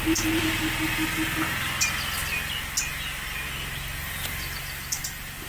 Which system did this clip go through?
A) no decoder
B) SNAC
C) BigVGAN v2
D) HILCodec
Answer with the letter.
A